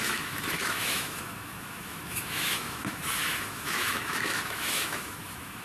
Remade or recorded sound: remade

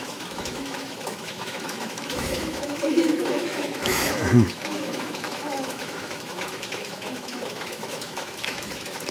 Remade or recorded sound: remade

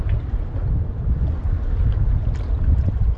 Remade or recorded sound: recorded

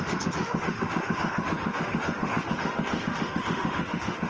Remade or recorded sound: remade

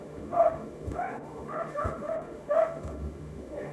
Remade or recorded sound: remade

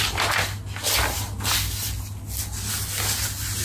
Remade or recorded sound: recorded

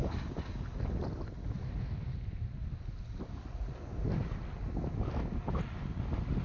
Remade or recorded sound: recorded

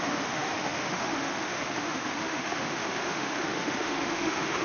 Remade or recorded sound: remade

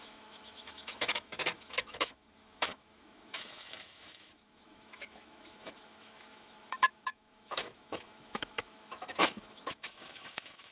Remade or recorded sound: remade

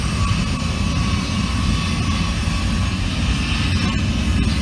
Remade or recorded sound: recorded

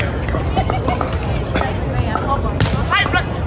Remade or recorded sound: recorded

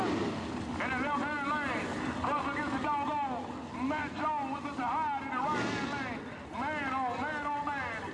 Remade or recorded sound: recorded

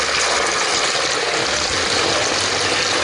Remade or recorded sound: recorded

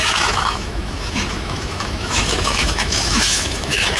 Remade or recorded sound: remade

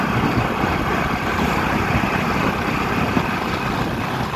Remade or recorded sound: recorded